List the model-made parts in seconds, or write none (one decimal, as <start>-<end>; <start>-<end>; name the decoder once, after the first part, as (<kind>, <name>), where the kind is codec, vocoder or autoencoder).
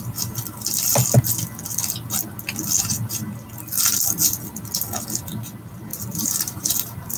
5.9-7.2 (vocoder, BigVGAN v2)